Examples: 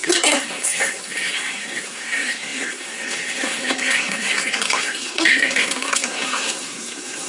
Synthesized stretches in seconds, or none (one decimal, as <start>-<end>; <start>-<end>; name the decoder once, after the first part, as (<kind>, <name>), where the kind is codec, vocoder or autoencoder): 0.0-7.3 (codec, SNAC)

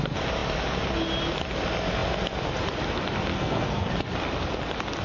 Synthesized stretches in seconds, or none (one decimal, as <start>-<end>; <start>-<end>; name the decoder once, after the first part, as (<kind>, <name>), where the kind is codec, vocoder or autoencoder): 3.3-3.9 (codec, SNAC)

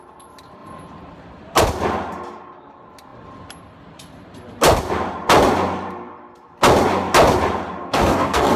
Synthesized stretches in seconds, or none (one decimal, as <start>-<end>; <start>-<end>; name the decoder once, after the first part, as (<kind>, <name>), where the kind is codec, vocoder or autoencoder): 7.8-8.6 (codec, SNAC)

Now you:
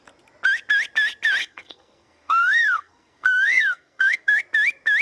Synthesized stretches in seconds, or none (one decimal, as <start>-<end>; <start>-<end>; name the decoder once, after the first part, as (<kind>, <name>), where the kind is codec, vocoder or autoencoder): 1.4-4.4 (codec, SNAC)

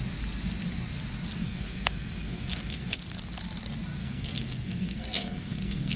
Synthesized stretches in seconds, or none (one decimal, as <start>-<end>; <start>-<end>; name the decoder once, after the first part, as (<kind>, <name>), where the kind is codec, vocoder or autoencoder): 1.4-3.0 (codec, SNAC); 4.0-6.0

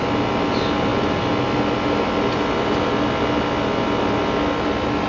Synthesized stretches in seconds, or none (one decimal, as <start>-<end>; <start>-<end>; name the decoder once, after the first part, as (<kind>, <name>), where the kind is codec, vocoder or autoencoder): none

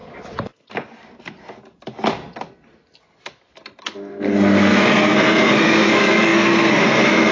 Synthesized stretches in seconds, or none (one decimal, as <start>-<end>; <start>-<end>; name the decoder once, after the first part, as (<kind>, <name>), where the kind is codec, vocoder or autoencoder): 3.8-7.3 (codec, SNAC)